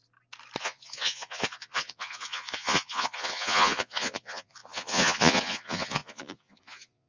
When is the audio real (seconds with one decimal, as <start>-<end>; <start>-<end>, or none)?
0.0-0.6